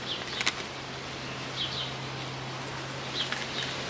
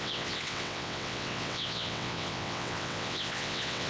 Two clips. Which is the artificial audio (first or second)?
second